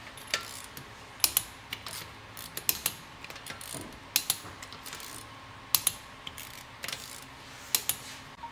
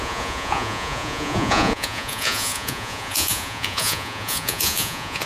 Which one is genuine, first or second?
first